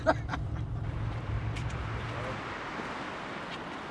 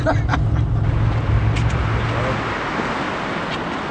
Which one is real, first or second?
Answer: second